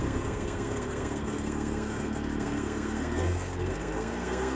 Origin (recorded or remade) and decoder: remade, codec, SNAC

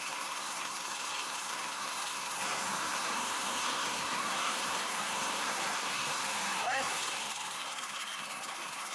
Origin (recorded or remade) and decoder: remade, codec, SNAC